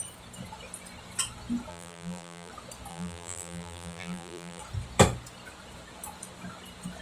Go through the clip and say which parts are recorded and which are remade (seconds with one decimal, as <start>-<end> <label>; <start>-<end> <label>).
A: 0.0-1.7 recorded; 1.7-2.5 remade; 2.5-2.9 recorded; 2.9-4.6 remade; 4.6-7.0 recorded